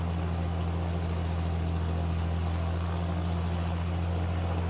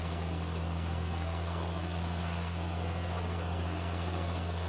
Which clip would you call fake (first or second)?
second